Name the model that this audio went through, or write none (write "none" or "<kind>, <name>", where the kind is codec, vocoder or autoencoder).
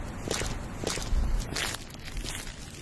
none